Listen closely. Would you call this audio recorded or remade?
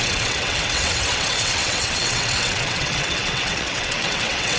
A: remade